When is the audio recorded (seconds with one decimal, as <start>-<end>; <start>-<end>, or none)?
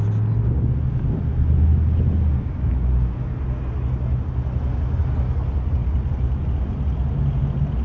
0.0-7.8